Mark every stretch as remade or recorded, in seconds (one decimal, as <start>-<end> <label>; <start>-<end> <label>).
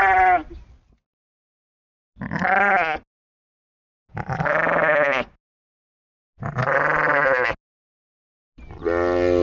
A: 0.0-9.4 recorded